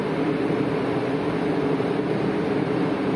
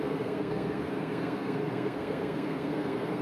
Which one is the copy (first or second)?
second